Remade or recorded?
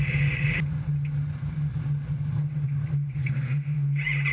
recorded